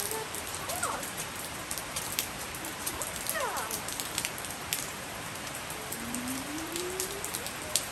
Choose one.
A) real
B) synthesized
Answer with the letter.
B